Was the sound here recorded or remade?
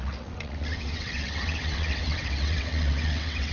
remade